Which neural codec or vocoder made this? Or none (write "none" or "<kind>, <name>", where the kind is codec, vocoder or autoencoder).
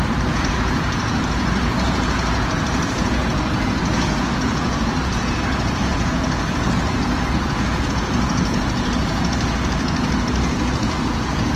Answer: vocoder, Vocos